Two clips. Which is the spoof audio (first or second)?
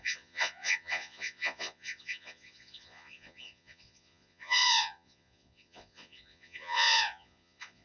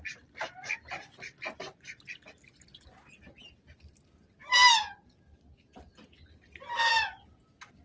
first